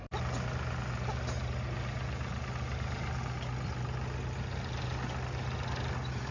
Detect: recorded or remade recorded